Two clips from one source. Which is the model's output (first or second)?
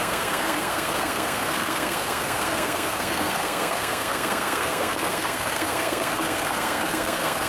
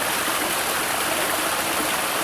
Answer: first